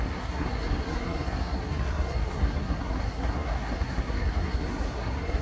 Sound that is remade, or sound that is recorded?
remade